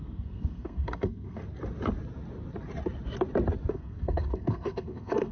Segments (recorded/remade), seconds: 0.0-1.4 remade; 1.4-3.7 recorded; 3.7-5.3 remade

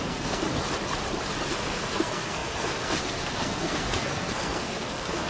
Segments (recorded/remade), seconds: 0.0-0.4 remade; 0.4-1.5 recorded; 1.5-5.3 remade

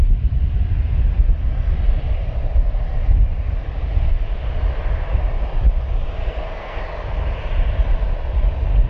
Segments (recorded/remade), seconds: 0.0-6.2 recorded; 6.2-6.8 remade; 6.8-8.9 recorded